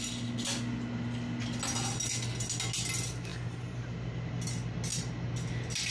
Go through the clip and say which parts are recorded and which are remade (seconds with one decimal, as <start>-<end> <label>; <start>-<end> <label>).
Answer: 0.0-3.3 recorded; 3.3-4.2 remade; 4.2-5.9 recorded